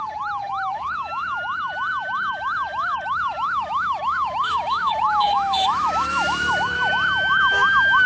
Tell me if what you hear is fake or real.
fake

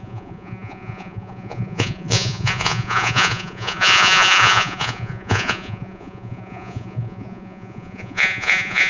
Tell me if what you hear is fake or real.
fake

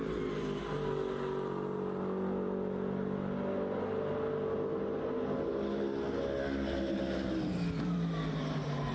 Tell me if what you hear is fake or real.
real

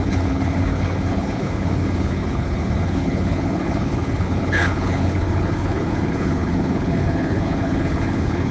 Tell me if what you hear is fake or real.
fake